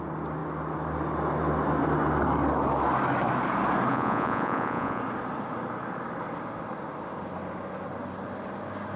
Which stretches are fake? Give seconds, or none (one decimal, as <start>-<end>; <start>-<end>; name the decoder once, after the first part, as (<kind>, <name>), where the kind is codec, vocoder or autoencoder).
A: 3.9-5.0 (vocoder, Vocos)